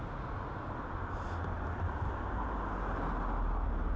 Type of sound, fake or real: real